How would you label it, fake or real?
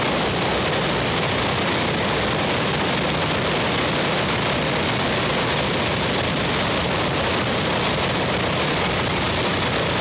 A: real